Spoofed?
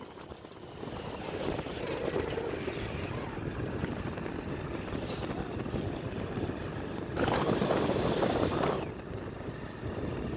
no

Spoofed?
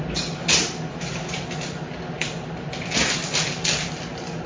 no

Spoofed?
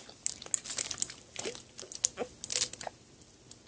no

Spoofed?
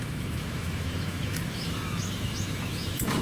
yes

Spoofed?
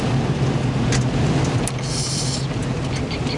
no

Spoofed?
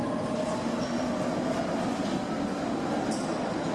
no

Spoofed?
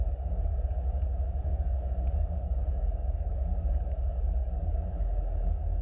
yes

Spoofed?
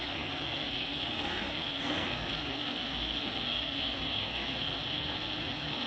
yes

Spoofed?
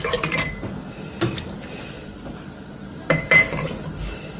no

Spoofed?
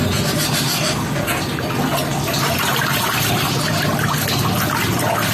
no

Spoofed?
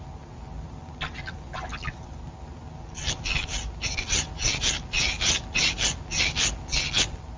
no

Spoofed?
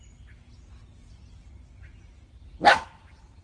no